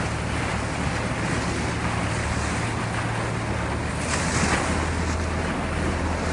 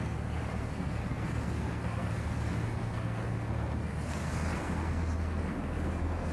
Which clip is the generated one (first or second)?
second